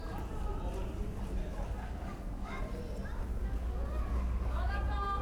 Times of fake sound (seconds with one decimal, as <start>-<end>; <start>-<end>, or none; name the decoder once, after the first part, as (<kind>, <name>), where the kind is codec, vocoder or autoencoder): 1.4-2.6 (codec, DAC); 3.3-4.8